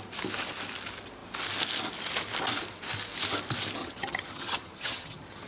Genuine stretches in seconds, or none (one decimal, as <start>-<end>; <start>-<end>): 0.0-3.8